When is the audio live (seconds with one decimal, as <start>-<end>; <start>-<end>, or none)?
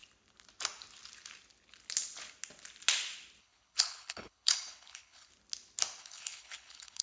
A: 0.0-3.4; 5.3-6.0